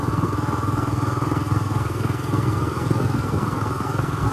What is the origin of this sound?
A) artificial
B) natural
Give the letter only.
A